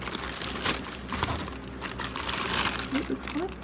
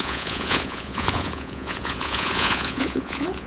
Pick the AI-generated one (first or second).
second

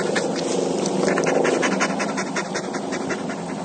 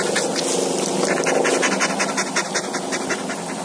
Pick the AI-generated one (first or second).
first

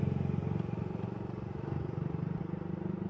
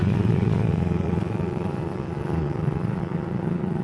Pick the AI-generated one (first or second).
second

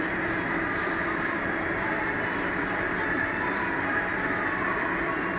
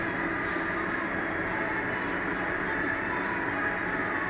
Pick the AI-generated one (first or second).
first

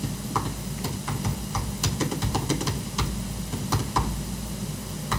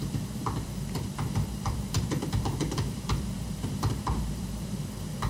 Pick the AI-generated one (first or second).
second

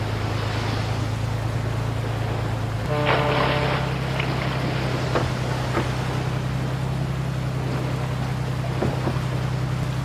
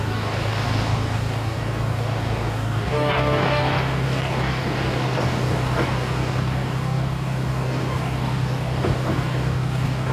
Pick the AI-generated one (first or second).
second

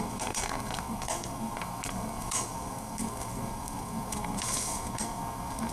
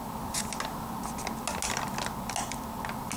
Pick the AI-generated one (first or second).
first